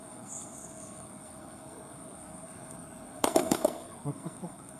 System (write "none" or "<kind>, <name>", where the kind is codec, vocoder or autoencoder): codec, SNAC